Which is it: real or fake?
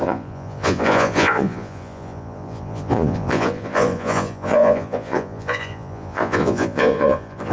fake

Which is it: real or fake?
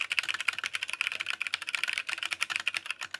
real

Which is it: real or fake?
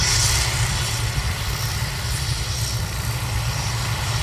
real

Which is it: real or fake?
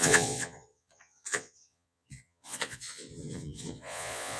fake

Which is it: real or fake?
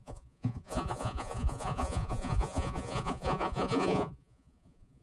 fake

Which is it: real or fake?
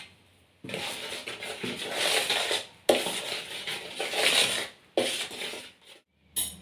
real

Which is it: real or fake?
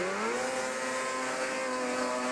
real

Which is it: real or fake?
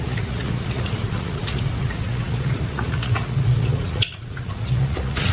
fake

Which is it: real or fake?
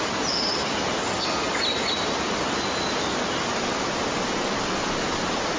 real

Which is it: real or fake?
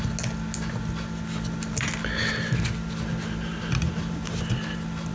real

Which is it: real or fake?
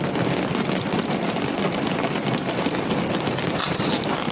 real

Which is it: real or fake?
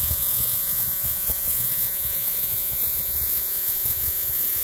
fake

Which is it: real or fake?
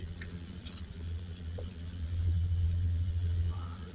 fake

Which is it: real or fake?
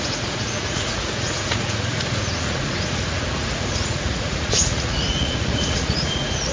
fake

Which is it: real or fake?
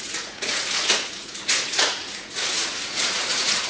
fake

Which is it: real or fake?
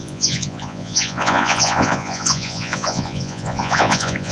fake